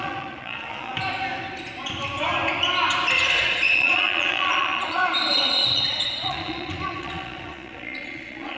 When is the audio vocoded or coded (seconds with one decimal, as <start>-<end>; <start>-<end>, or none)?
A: 0.0-0.9; 3.4-8.6